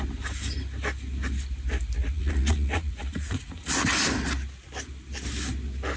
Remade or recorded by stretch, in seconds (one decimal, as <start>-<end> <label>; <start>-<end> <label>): 0.0-2.0 recorded; 2.0-3.7 remade; 3.7-6.0 recorded